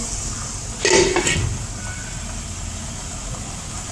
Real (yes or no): yes